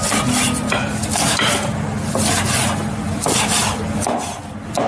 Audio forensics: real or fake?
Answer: real